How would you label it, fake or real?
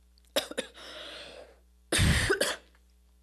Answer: real